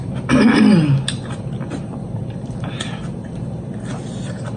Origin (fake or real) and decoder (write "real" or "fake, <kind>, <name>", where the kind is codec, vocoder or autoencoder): real